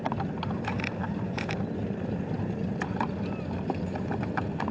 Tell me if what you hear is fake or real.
real